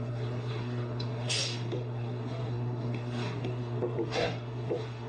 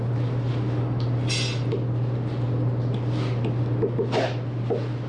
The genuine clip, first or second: second